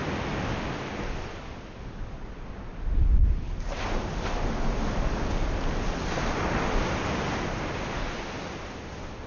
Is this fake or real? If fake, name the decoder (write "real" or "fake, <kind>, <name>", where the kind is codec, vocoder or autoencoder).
real